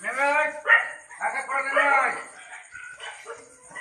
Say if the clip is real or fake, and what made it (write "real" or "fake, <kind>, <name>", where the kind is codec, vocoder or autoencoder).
real